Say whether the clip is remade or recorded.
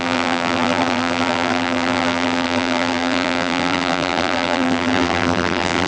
remade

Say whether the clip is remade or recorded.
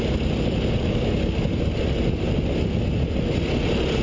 recorded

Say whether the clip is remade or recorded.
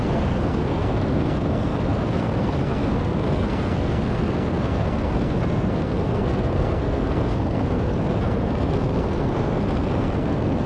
remade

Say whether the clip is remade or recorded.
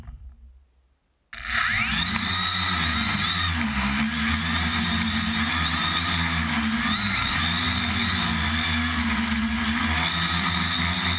recorded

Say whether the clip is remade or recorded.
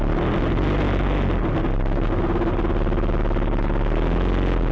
recorded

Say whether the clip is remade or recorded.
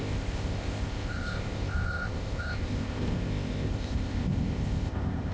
remade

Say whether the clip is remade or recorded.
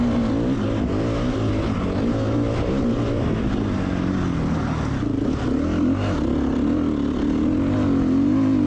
recorded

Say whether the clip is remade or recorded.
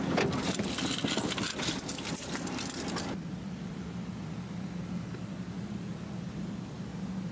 recorded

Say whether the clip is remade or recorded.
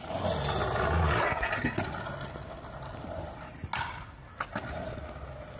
recorded